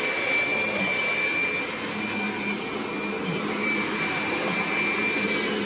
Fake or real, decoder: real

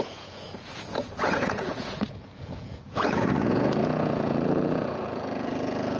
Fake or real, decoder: fake, vocoder, Vocos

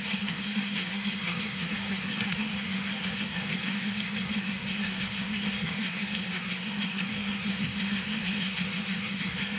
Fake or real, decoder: fake, codec, SNAC